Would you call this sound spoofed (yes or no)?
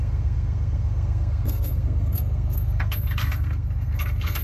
yes